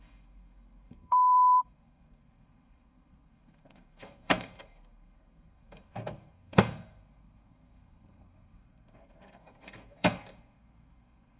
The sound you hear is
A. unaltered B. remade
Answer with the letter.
B